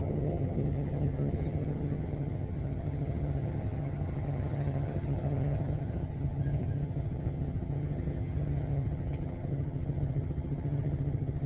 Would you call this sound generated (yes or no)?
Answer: yes